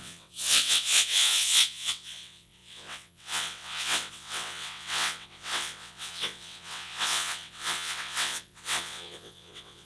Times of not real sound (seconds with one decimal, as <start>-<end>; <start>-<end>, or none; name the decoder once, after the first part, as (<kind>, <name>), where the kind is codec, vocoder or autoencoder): 0.0-9.8 (vocoder, WaveNeXt)